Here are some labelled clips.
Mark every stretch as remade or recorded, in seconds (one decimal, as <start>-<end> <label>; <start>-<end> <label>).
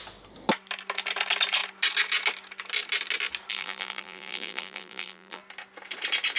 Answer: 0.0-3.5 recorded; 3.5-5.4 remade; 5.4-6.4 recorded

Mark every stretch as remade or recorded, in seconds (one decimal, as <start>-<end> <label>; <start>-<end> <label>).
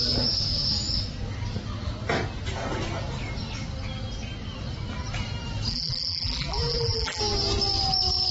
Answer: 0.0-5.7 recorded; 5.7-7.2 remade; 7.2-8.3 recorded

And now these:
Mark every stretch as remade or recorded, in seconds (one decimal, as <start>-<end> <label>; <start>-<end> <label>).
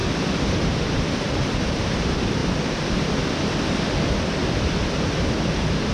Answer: 0.0-5.9 remade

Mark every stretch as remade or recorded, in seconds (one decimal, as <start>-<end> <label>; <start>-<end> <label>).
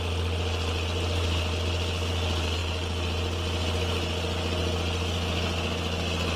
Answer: 0.0-6.4 recorded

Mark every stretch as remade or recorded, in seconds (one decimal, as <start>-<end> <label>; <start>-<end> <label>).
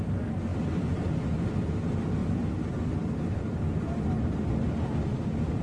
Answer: 0.0-5.6 recorded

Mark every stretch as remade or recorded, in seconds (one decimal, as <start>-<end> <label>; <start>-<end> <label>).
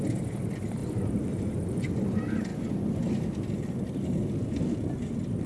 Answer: 0.0-0.8 recorded; 0.8-1.9 remade; 1.9-5.5 recorded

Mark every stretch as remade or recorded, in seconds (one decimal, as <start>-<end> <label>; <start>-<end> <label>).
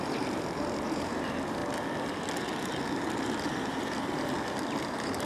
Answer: 0.0-1.6 remade; 1.6-4.8 recorded; 4.8-5.3 remade